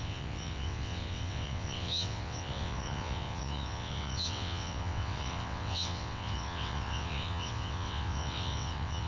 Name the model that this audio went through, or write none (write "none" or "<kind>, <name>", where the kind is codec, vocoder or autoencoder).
vocoder, WaveNeXt